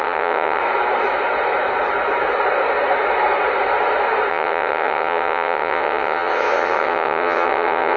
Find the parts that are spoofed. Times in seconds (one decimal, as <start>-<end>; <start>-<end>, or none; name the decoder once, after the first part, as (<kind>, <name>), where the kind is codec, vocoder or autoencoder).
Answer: 0.0-0.6 (vocoder, WaveNeXt); 4.3-8.0